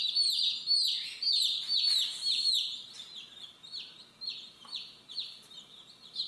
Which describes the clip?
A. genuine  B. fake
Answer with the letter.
A